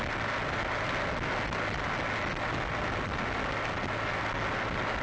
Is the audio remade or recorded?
recorded